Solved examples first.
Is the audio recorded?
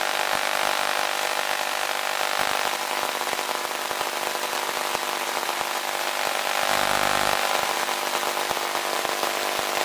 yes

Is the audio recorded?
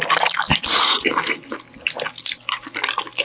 yes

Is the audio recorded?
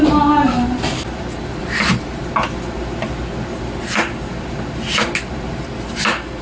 yes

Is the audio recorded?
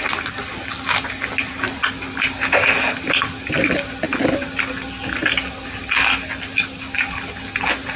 yes